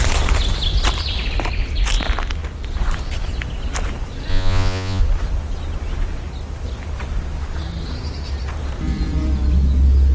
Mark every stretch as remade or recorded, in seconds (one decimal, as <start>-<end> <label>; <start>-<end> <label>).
0.0-4.3 recorded; 4.3-5.0 remade; 5.0-10.1 recorded